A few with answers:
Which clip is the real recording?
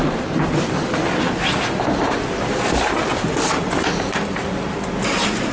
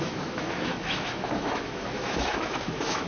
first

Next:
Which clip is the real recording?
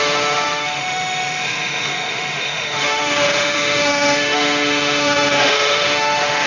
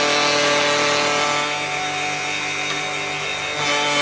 second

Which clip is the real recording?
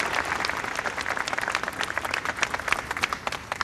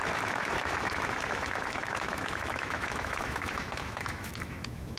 first